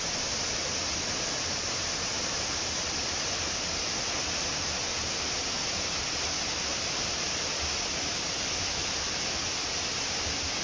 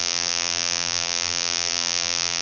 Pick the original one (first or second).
first